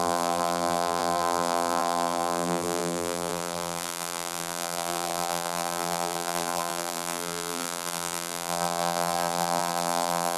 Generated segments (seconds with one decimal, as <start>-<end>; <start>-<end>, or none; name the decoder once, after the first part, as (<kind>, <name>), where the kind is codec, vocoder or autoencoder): 0.0-10.4 (vocoder, BigVGAN v2)